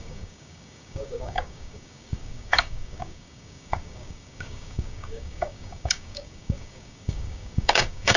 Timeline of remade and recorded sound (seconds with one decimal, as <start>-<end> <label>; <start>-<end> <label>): 0.0-8.2 remade